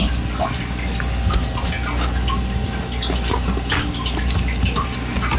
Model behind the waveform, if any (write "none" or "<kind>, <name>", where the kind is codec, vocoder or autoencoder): none